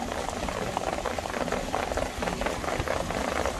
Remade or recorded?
recorded